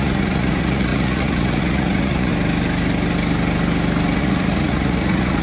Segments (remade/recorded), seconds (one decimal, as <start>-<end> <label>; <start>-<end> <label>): 0.0-2.3 remade; 2.3-4.2 recorded; 4.2-5.4 remade